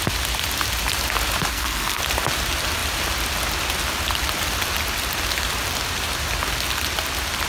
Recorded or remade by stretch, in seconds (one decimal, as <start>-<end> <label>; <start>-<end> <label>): 0.0-1.5 recorded; 1.5-2.0 remade; 2.0-7.5 recorded